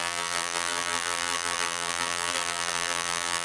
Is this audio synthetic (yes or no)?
yes